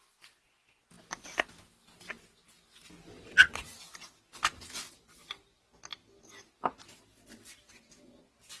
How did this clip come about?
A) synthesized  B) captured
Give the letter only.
B